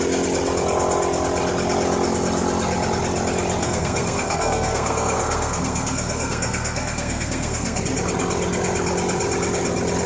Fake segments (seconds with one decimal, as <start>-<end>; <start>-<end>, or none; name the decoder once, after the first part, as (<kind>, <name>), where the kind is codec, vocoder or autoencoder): 3.6-7.8 (codec, SNAC)